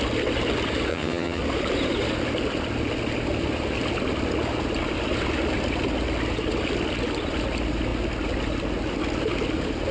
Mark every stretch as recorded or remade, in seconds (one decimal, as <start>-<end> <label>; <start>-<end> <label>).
0.0-0.9 recorded; 0.9-1.4 remade; 1.4-9.9 recorded